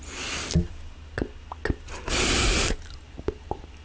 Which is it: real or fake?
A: real